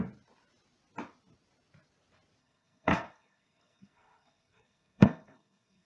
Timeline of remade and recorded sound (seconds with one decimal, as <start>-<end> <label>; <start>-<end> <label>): 0.0-2.4 recorded; 2.4-5.9 remade